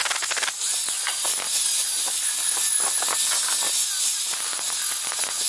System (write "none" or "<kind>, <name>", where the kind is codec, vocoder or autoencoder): none